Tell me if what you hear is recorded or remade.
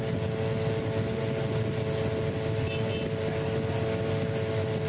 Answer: recorded